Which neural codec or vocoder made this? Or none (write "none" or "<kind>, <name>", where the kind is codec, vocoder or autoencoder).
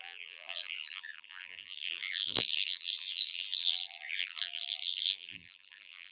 vocoder, BigVGAN v2